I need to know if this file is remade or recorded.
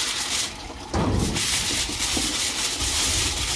recorded